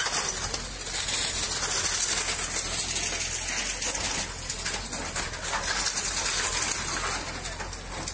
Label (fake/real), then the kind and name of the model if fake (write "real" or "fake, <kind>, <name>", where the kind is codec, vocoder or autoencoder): real